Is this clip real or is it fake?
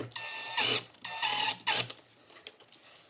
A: real